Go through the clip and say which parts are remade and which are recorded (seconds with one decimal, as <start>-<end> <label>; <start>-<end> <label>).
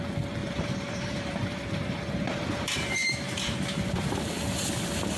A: 0.0-0.4 recorded; 0.4-3.5 remade; 3.5-5.2 recorded